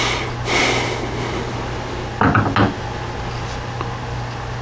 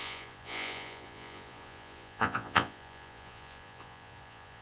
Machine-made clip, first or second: second